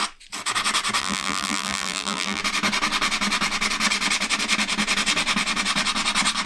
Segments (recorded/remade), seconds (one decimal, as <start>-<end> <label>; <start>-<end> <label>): 0.0-1.0 recorded; 1.0-2.4 remade; 2.4-6.5 recorded